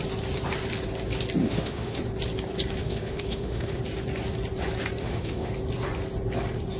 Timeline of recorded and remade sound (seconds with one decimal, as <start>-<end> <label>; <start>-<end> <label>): 0.0-1.4 recorded; 1.4-2.0 remade; 2.0-2.8 recorded; 2.8-3.8 remade; 3.8-5.0 recorded; 5.0-5.5 remade; 5.5-6.8 recorded